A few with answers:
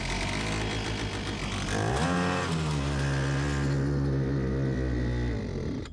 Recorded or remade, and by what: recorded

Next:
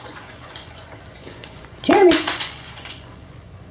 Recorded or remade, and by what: remade, vocoder, Vocos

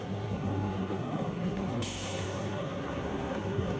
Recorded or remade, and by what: remade, codec, SNAC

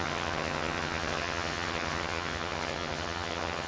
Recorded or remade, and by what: remade, vocoder, HiFi-GAN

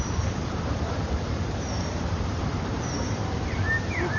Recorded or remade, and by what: remade, vocoder, BigVGAN v2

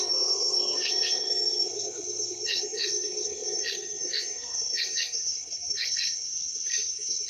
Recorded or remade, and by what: remade, codec, SNAC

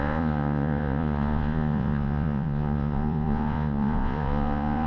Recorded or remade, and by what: remade, vocoder, Vocos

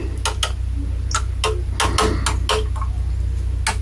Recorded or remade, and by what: recorded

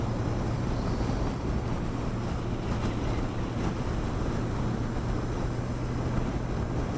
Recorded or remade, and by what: recorded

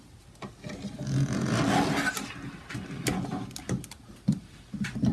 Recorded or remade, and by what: recorded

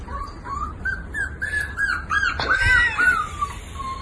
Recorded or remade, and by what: recorded